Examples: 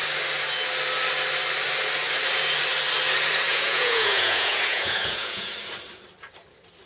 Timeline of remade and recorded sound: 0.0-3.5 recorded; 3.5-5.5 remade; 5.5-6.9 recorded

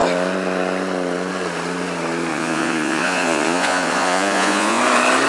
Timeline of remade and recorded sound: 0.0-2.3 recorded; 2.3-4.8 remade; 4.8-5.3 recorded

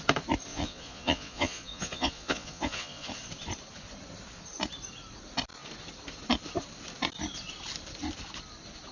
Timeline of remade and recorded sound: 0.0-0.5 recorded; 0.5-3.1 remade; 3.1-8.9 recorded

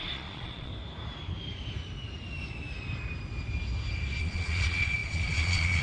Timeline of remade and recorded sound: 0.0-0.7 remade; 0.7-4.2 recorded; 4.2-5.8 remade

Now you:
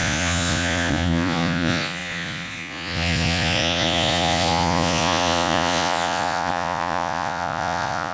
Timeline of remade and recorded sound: 0.0-8.1 remade